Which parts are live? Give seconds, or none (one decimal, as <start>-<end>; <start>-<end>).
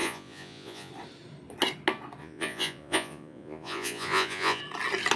0.9-2.2; 4.6-5.2